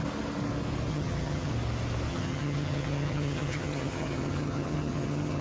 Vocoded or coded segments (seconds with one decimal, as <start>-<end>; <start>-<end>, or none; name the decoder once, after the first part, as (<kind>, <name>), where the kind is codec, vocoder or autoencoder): 0.9-1.5 (vocoder, HiFi-GAN); 2.1-5.4